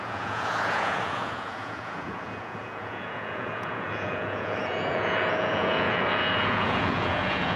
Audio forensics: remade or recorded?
remade